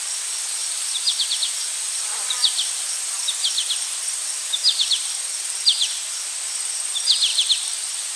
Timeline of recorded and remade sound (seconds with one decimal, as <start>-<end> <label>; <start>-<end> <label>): 0.0-0.6 recorded; 0.6-2.9 remade; 2.9-7.3 recorded; 7.3-8.2 remade